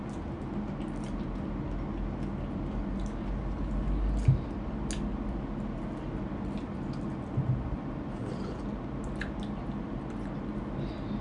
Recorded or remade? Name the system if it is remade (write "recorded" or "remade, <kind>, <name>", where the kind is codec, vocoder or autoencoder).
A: recorded